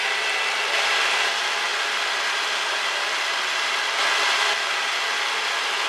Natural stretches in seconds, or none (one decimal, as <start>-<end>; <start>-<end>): 0.0-5.9